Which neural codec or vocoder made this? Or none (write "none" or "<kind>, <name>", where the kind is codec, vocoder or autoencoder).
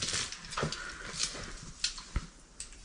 none